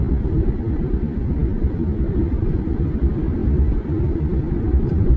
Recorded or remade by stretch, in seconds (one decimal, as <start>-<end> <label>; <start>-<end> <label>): 0.0-5.2 recorded